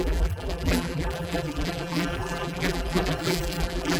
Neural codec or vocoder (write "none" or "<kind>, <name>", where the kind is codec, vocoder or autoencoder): vocoder, BigVGAN v2